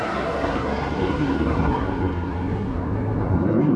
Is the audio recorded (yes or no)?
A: no